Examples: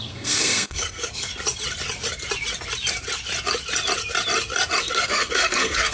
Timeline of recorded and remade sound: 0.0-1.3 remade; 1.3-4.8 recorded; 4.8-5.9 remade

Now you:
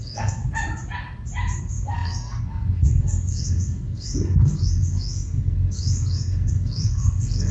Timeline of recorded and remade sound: 0.0-0.4 remade; 0.4-1.6 recorded; 1.6-7.5 remade

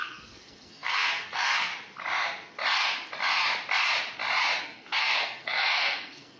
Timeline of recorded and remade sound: 0.0-1.7 remade; 1.7-4.6 recorded; 4.6-6.4 remade